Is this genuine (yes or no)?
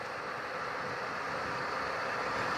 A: yes